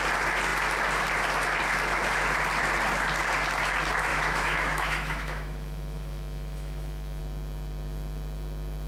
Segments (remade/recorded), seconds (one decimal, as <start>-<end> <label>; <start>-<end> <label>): 0.0-4.1 recorded; 4.1-7.2 remade; 7.2-8.9 recorded